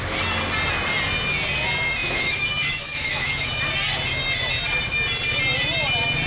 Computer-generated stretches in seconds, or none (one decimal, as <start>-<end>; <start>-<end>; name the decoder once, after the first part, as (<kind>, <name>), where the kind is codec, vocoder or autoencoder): 2.0-3.6 (autoencoder, DAC-VAE)